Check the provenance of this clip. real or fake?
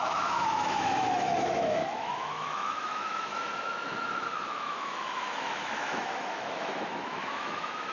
fake